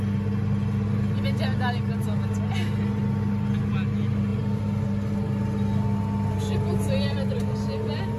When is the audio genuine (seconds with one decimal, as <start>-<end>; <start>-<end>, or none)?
0.0-8.2